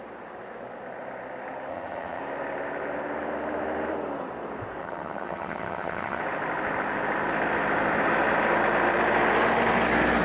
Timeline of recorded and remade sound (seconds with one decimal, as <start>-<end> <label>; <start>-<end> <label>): 0.0-1.7 recorded; 1.7-2.2 remade; 2.2-4.8 recorded; 4.8-6.2 remade; 6.2-10.2 recorded